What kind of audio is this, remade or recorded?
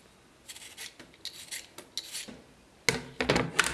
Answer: recorded